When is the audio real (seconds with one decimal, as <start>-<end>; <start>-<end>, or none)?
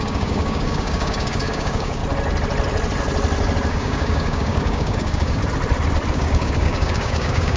2.0-3.7; 5.4-6.1